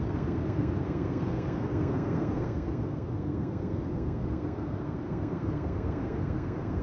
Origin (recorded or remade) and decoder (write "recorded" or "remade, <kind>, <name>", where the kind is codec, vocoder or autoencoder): remade, codec, SNAC